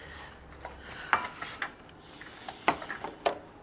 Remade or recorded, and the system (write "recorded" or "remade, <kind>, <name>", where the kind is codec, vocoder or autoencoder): recorded